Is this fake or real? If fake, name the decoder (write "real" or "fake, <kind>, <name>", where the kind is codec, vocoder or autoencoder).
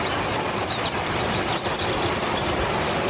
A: real